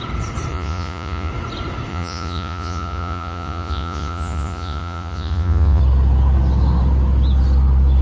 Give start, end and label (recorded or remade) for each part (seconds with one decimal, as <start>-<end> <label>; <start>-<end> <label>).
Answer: 0.0-0.5 recorded; 0.5-1.3 remade; 1.3-1.9 recorded; 1.9-5.8 remade; 5.8-8.0 recorded